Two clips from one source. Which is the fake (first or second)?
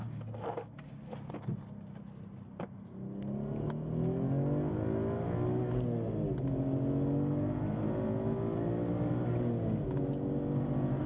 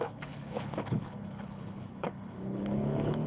second